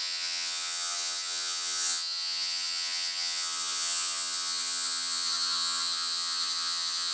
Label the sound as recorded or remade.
remade